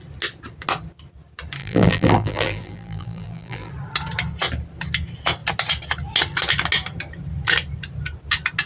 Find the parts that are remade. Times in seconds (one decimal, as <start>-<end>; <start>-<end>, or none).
1.6-3.7